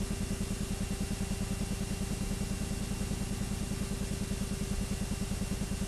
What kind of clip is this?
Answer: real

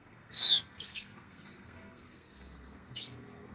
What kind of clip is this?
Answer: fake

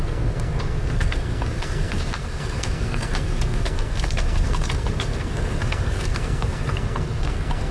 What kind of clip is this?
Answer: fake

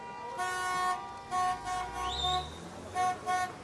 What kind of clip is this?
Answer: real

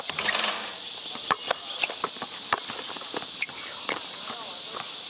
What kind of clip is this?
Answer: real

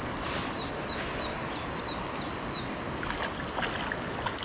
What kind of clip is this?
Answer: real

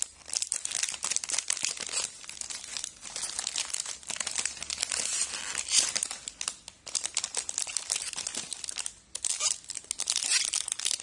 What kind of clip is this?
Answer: real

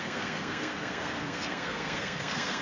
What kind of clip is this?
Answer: fake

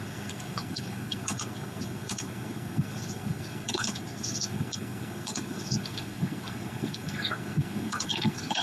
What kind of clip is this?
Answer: fake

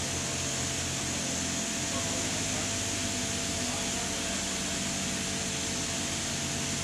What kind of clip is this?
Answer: real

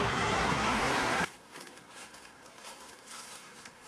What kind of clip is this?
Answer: fake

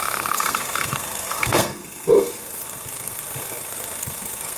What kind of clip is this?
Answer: fake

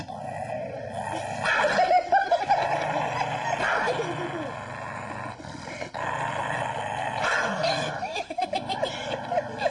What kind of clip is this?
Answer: real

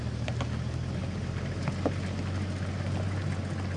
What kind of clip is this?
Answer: real